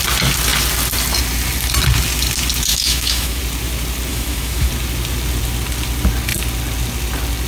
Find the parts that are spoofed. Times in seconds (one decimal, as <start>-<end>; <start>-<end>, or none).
2.7-3.4; 4.1-4.7